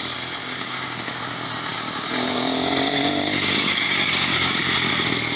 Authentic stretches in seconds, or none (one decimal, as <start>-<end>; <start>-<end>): 0.0-0.4; 1.1-1.7; 4.6-5.4